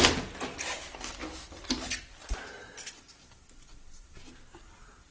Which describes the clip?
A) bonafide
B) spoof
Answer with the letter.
A